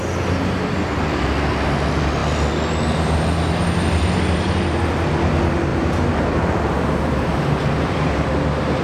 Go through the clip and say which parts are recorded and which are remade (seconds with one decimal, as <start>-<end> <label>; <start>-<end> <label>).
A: 0.0-5.7 recorded; 5.7-8.3 remade; 8.3-8.8 recorded